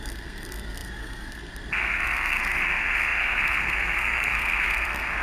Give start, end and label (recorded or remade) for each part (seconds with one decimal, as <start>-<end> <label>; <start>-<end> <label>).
0.0-5.2 remade